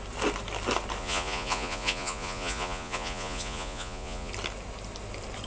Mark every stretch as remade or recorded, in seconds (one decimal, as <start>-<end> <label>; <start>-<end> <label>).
0.0-1.0 recorded; 1.0-4.3 remade; 4.3-5.5 recorded